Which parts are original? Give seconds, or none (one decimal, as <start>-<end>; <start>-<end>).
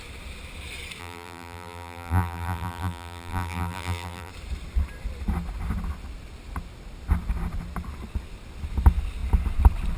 0.0-1.0; 4.3-10.0